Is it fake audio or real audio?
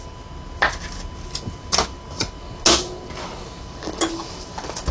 real